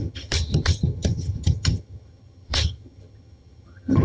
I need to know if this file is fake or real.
fake